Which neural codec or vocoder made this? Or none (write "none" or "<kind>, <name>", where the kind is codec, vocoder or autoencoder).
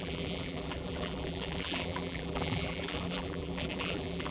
vocoder, BigVGAN v2